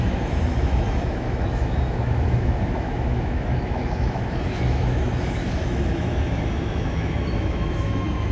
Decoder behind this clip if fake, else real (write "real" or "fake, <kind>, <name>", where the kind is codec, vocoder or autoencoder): fake, autoencoder, DAC-VAE